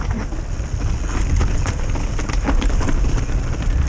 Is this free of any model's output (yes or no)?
yes